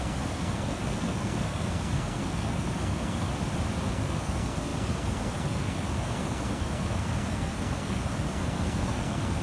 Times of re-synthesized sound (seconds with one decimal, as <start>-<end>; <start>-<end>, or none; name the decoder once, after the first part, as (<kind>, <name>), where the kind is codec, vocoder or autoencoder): 0.0-3.3 (codec, SNAC); 3.9-9.4